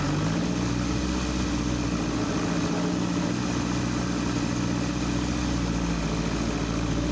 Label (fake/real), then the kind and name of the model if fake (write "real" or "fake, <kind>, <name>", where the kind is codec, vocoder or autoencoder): real